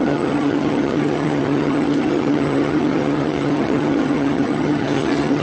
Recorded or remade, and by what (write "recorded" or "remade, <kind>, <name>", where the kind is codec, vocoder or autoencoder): remade, vocoder, HiFi-GAN